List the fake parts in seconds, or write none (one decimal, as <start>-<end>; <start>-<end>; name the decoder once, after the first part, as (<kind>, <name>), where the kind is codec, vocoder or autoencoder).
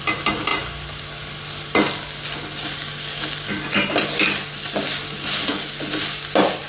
none